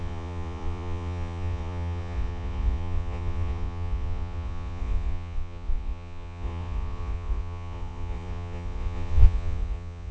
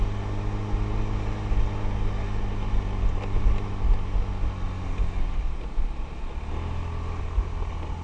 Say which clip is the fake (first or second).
first